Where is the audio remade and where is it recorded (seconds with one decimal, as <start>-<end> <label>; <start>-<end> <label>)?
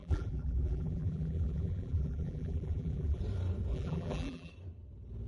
0.0-3.2 remade; 3.2-3.7 recorded; 3.7-4.5 remade; 4.5-5.3 recorded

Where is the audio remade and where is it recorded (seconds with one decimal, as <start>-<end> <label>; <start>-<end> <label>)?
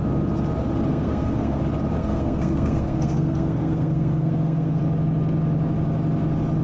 0.0-0.9 recorded; 0.9-1.6 remade; 1.6-2.0 recorded; 2.0-4.8 remade; 4.8-6.6 recorded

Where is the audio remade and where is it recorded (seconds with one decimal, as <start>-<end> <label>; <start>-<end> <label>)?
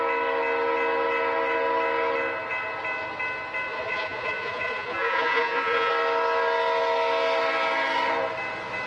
0.0-3.7 recorded; 3.7-5.9 remade; 5.9-8.9 recorded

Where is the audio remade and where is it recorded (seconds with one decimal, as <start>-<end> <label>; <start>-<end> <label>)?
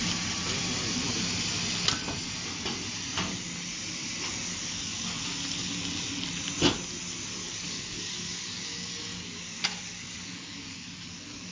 0.0-4.6 recorded; 4.6-5.2 remade; 5.2-7.4 recorded; 7.4-11.5 remade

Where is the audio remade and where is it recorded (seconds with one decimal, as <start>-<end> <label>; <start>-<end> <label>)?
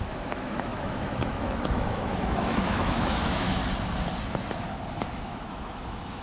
0.0-3.6 remade; 3.6-5.0 recorded; 5.0-6.2 remade